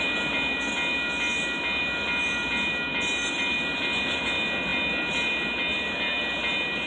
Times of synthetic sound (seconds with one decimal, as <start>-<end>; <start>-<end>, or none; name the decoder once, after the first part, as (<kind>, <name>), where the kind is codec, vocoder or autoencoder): none

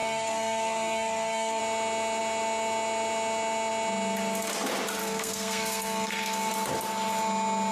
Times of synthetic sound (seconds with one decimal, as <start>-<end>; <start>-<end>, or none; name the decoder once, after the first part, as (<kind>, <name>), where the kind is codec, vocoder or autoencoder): 0.0-1.6 (codec, SNAC); 5.0-6.5